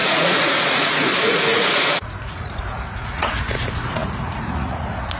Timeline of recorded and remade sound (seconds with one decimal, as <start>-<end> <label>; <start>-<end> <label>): 0.0-5.2 remade